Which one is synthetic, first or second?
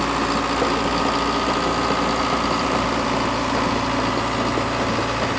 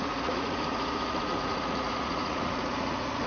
second